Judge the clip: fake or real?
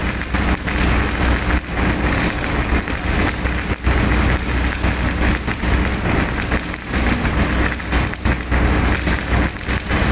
real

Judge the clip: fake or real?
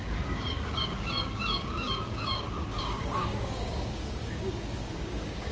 fake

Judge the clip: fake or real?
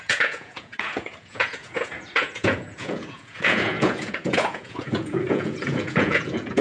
fake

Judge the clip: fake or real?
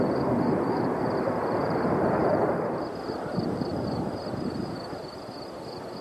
fake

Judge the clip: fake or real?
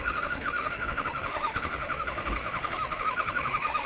fake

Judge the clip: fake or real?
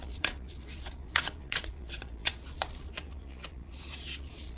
fake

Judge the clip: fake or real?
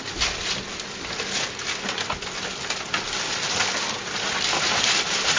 real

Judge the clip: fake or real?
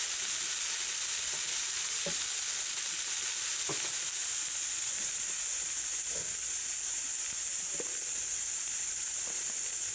real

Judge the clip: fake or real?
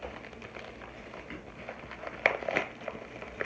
real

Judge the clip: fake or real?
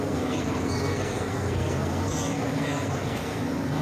fake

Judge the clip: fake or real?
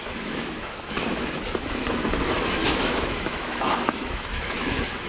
fake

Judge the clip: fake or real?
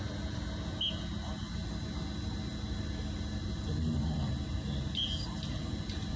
real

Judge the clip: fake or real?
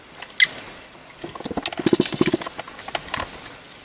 real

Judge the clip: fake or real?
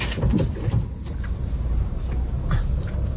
real